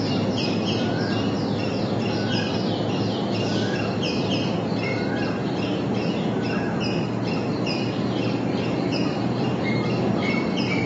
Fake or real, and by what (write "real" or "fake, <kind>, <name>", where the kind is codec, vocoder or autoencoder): real